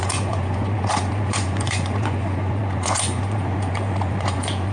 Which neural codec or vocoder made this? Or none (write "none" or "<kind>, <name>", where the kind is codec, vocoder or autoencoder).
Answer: vocoder, Vocos